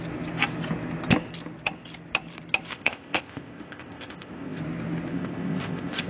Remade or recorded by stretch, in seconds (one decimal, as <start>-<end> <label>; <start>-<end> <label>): 0.0-2.7 recorded; 2.7-4.6 remade; 4.6-5.1 recorded; 5.1-6.1 remade